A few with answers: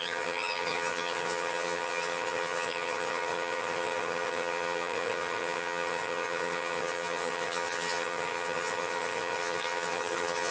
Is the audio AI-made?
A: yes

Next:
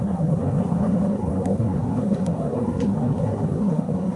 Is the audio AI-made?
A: yes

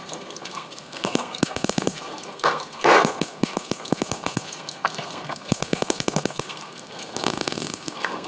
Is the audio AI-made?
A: yes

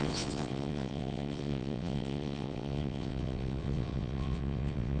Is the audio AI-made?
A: yes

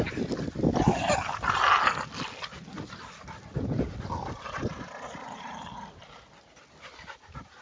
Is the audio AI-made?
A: no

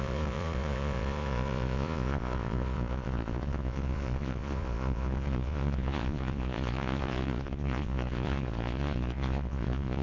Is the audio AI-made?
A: yes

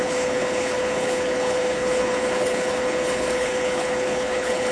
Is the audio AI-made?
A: yes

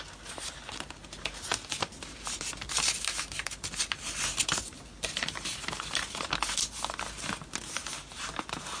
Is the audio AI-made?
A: no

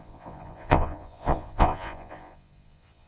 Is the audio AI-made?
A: yes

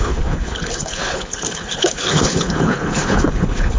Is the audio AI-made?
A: yes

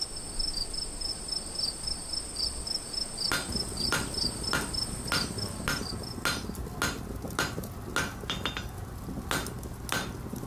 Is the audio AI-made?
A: no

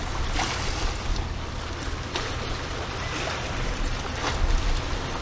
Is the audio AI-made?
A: no